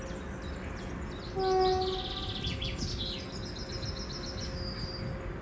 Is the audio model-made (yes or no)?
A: no